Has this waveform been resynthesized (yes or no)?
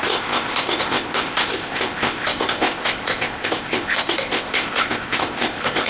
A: yes